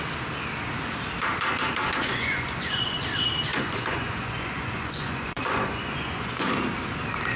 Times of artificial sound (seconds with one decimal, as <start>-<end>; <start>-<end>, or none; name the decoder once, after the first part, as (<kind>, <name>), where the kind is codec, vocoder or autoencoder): 1.8-3.0 (vocoder, Vocos); 3.5-6.5